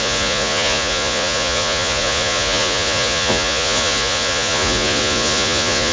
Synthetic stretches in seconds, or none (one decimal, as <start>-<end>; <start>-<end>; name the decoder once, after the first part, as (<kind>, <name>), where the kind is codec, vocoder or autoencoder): 0.0-5.9 (vocoder, Vocos)